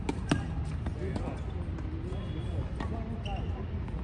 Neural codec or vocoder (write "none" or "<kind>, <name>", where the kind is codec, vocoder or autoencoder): none